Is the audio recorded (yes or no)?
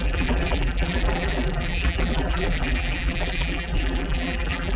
no